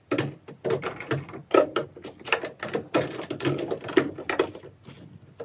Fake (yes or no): no